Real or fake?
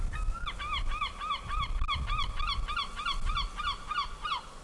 real